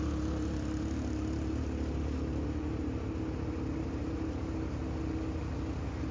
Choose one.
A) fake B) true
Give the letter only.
B